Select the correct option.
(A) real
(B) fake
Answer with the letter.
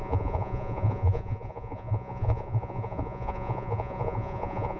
B